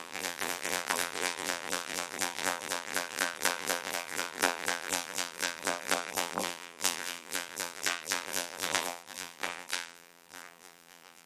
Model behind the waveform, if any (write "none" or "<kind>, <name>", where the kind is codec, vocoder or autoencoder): vocoder, BigVGAN v2